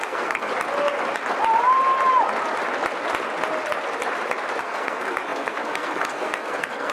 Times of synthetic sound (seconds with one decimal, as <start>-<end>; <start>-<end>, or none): 0.0-0.5; 4.6-6.9

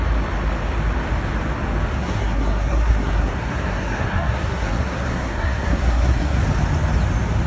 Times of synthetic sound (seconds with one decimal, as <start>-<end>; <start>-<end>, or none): 2.0-6.4

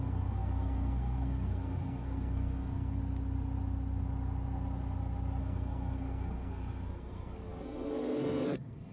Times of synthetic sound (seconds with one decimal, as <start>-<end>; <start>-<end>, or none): 0.0-3.0; 5.4-8.9

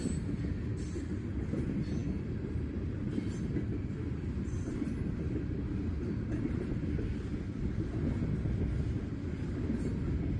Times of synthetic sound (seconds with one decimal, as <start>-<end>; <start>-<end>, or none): none

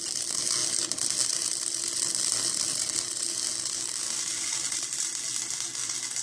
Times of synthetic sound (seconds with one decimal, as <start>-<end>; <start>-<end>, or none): none

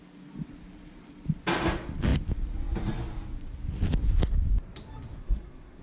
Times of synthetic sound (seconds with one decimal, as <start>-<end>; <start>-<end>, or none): 5.2-5.8